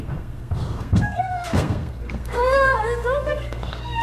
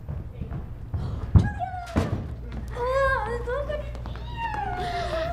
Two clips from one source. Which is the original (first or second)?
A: second